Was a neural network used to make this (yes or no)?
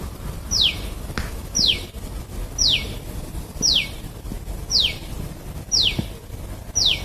no